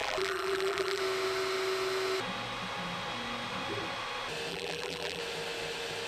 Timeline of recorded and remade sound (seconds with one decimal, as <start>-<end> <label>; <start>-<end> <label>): 0.0-1.0 remade; 1.0-4.5 recorded; 4.5-5.2 remade; 5.2-6.1 recorded